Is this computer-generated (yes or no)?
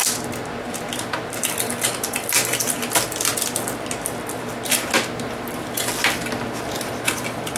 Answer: no